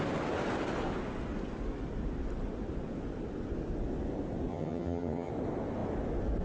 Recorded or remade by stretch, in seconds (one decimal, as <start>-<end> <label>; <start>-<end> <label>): 0.0-4.5 recorded; 4.5-5.3 remade; 5.3-6.4 recorded